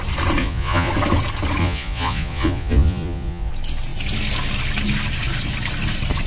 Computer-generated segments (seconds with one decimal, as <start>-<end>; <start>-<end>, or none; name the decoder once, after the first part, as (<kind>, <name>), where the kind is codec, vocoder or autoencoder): 0.4-0.9 (vocoder, Vocos); 1.6-3.5